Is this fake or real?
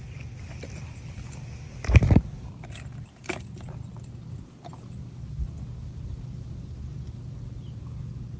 real